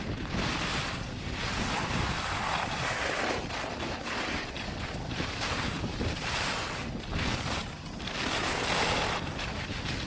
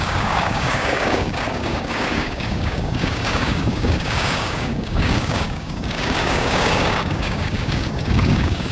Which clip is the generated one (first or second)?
second